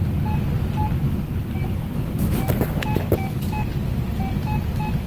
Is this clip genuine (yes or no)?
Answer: yes